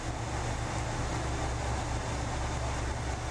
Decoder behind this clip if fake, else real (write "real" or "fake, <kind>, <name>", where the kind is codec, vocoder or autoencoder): real